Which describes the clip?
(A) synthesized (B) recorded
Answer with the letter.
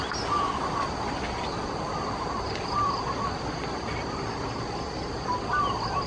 B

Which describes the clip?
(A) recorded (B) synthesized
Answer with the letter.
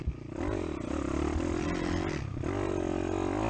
A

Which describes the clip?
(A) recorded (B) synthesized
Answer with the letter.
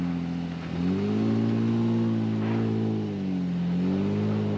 A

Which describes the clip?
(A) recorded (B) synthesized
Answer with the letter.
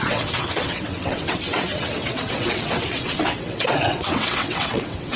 B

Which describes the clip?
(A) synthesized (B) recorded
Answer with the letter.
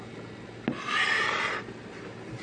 B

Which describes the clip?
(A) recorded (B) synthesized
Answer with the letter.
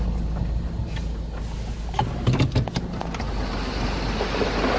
A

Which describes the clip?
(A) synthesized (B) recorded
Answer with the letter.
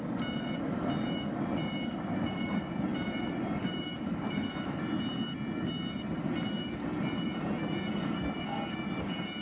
B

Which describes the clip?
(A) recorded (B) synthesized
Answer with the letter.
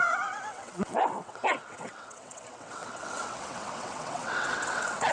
B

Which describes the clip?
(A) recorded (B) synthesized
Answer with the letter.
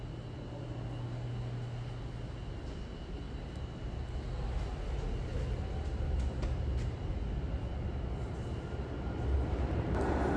A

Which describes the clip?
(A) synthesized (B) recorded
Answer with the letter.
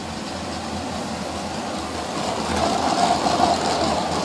B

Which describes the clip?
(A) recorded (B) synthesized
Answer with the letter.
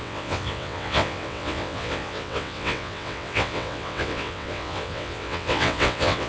B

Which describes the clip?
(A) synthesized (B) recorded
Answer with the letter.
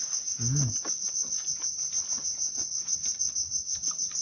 B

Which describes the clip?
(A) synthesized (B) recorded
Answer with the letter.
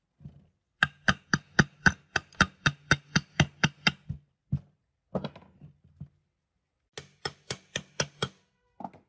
B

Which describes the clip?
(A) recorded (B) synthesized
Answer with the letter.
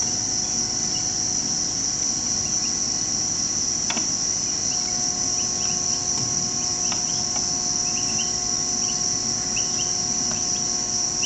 A